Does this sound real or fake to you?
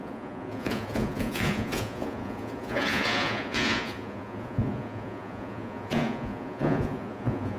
fake